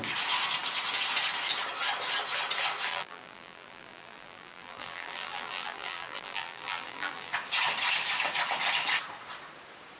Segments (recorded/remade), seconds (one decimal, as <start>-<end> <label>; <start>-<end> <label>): 0.0-2.9 recorded; 2.9-7.3 remade; 7.3-10.0 recorded